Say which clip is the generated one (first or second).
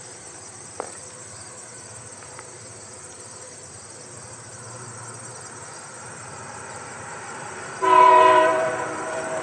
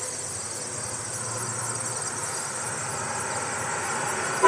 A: first